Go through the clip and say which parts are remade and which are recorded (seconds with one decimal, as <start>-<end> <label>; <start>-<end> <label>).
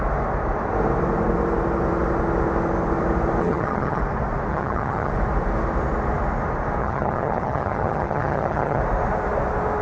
0.0-3.4 recorded; 3.4-4.0 remade; 4.0-4.5 recorded; 4.5-5.1 remade; 5.1-6.8 recorded; 6.8-8.8 remade; 8.8-9.8 recorded